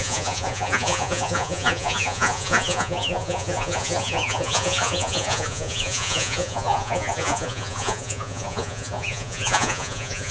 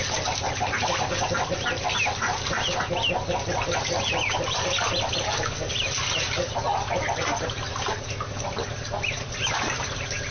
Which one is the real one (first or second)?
second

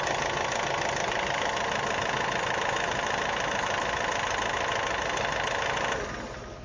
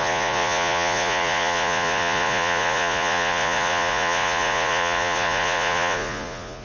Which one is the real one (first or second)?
first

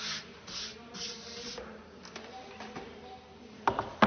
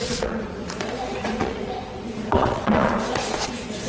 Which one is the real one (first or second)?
first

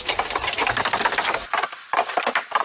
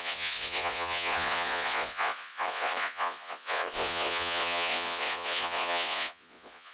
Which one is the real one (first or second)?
first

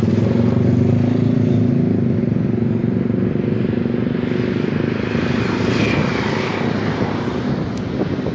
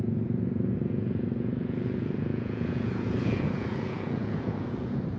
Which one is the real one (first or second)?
first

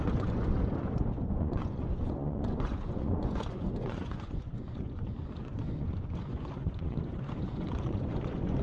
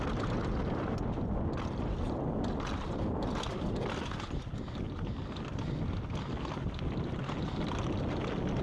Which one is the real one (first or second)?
second